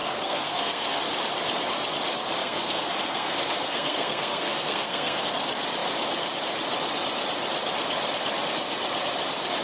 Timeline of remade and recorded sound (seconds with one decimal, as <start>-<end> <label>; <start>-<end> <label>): 0.0-1.0 remade; 1.0-2.4 recorded; 2.4-5.2 remade; 5.2-9.6 recorded